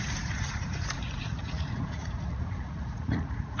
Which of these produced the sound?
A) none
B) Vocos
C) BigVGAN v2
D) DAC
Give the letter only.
B